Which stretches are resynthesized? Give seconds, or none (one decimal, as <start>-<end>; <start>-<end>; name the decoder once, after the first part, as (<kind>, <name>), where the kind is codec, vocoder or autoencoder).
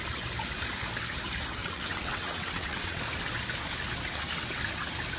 1.6-3.0 (vocoder, WaveNeXt)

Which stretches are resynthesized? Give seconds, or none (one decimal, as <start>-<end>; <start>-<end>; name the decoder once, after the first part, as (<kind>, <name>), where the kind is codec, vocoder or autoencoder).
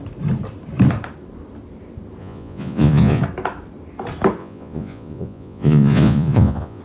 2.2-3.2 (vocoder, Vocos); 4.4-6.8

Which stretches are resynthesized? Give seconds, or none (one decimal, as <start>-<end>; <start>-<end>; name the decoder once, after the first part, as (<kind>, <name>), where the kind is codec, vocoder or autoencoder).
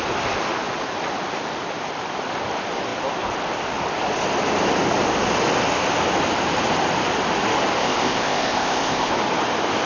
7.8-9.1 (codec, ZipCodec)